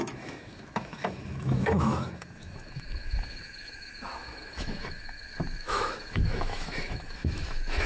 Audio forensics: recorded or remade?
remade